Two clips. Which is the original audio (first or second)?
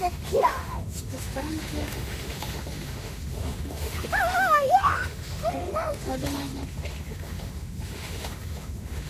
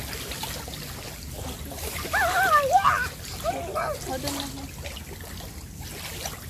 second